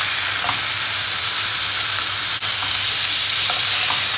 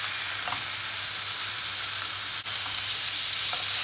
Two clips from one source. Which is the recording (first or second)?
second